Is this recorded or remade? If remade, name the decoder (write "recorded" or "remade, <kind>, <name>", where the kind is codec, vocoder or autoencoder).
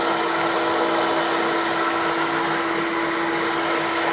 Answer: recorded